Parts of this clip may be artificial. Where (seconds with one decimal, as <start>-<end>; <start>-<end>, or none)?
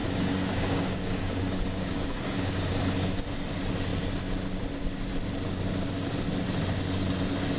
0.0-2.7